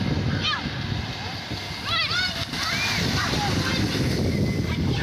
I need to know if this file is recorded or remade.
recorded